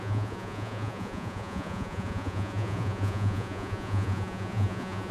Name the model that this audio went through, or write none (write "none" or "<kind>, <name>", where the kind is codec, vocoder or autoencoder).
vocoder, Vocos